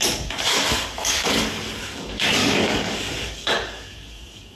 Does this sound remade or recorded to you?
remade